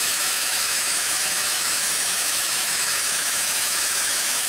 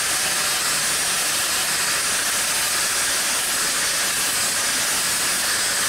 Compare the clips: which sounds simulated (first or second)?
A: first